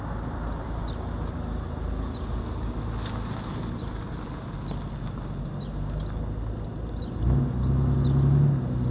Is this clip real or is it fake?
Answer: real